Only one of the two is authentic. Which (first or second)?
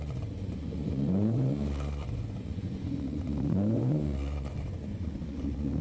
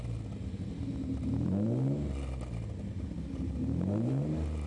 second